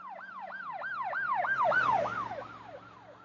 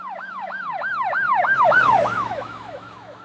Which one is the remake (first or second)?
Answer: second